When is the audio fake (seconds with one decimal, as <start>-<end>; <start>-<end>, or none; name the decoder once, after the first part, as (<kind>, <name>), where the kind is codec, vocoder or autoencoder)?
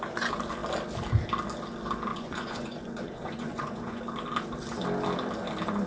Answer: 2.1-4.0 (vocoder, Vocos)